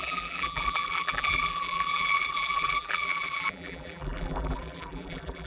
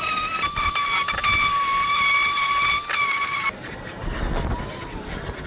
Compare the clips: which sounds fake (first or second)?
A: first